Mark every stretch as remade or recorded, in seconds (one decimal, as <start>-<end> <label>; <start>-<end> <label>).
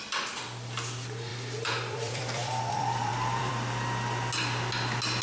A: 0.0-1.3 recorded; 1.3-3.5 remade; 3.5-5.2 recorded